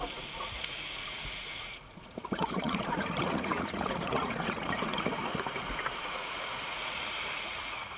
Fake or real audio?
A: fake